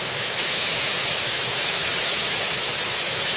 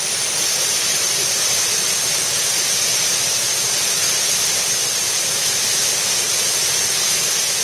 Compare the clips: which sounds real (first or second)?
second